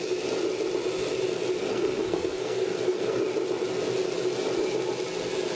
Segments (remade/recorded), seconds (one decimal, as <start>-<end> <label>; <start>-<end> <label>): 0.0-1.7 recorded; 1.7-3.2 remade; 3.2-5.6 recorded